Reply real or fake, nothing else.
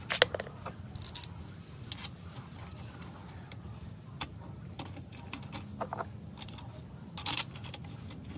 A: real